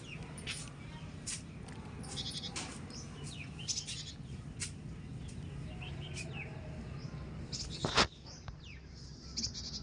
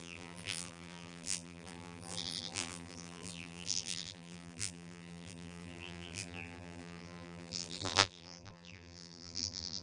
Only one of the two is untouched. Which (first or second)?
first